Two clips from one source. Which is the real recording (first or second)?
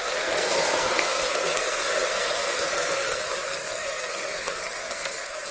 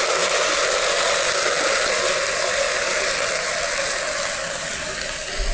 second